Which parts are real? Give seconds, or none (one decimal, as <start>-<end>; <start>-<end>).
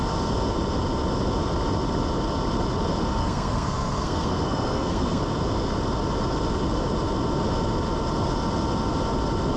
0.0-3.2; 5.2-9.6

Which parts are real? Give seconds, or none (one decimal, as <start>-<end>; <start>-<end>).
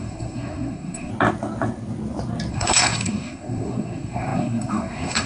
1.1-2.5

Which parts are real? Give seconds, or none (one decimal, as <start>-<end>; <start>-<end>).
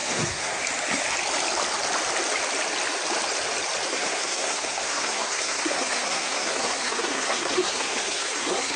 0.6-3.9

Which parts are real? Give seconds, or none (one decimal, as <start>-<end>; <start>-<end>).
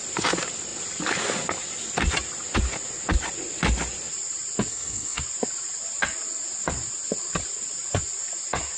0.0-4.7; 5.2-8.8